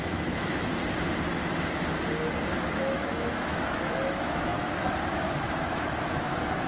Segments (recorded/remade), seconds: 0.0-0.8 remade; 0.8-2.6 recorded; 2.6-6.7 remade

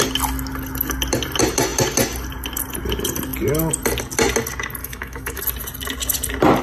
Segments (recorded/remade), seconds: 0.0-4.8 recorded; 4.8-5.4 remade; 5.4-6.6 recorded

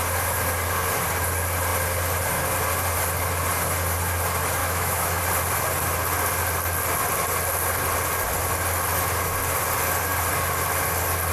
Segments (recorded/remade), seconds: 0.0-4.6 recorded; 4.6-5.2 remade; 5.2-11.3 recorded